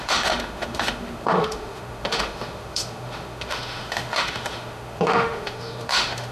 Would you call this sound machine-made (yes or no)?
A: yes